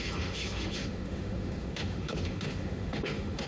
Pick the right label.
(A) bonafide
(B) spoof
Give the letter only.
B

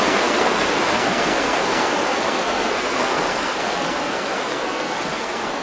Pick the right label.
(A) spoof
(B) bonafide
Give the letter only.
A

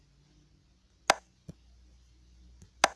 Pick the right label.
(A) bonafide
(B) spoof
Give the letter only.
A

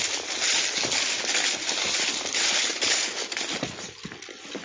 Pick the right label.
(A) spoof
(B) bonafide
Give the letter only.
B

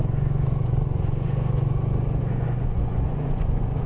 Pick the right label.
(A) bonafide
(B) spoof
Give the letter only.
B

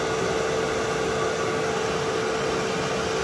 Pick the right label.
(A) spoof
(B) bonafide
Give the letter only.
B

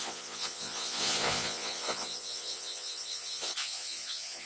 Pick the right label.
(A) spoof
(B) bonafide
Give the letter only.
A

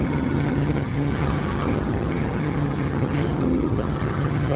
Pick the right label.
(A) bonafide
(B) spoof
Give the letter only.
B